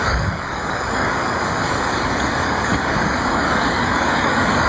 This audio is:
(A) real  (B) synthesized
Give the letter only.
B